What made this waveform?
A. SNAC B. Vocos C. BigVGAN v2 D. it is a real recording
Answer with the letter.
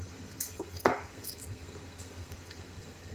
A